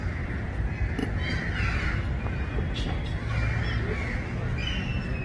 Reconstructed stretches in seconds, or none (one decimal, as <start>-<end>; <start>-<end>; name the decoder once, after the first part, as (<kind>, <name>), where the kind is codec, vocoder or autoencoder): 1.0-3.3 (vocoder, BigVGAN v2)